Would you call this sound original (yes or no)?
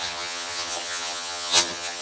no